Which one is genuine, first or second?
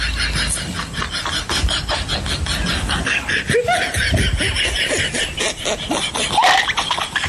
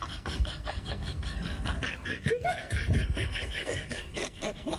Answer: first